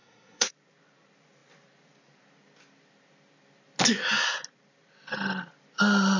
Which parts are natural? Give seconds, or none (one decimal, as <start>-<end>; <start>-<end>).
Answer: 0.5-6.2